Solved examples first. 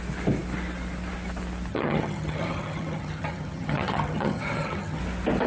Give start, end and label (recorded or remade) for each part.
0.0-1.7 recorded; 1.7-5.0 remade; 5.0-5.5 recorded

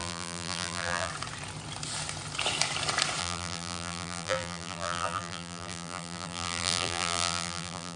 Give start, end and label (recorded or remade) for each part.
0.0-1.1 remade; 1.1-3.2 recorded; 3.2-8.0 remade